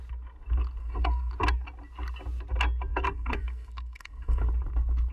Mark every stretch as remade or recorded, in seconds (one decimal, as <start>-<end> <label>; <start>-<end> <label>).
0.0-0.8 recorded; 0.8-1.3 remade; 1.3-2.9 recorded; 2.9-4.4 remade; 4.4-5.1 recorded